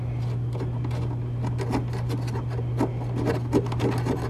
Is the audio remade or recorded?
recorded